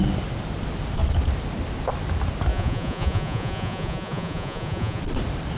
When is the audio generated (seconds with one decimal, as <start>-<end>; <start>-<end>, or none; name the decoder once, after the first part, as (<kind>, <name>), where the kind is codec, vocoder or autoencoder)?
2.5-5.0 (vocoder, Vocos)